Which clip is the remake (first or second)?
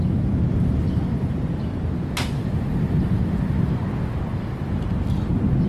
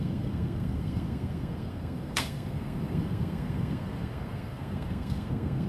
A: second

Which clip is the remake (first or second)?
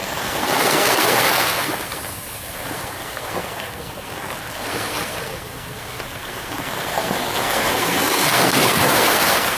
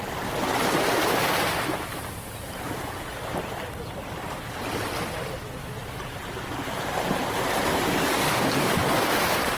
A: first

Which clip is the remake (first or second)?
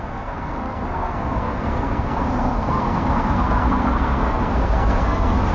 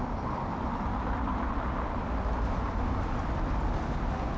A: first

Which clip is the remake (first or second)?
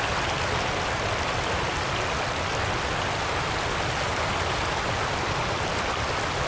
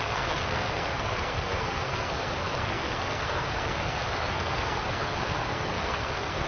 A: second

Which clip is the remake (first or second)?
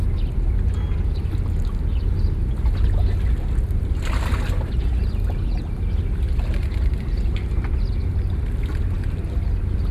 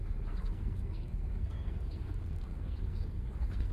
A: second